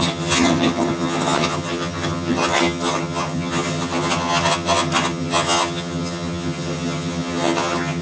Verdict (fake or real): fake